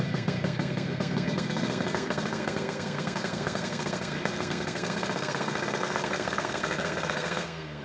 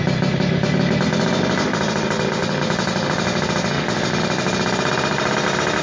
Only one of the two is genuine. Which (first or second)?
second